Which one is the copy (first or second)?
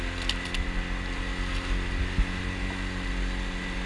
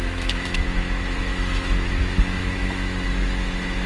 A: second